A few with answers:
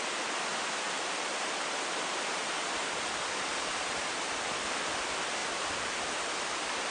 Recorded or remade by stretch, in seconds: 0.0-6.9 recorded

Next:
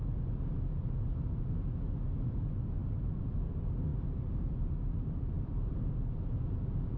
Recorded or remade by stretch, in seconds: 0.0-3.9 recorded; 3.9-5.9 remade; 5.9-7.0 recorded

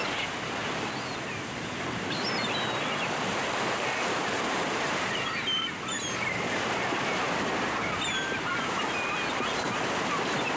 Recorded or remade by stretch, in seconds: 0.0-10.6 recorded